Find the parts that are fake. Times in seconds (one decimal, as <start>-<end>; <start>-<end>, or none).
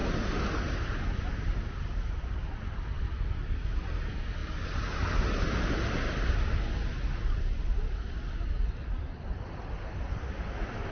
none